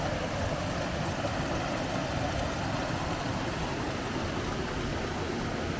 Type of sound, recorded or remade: recorded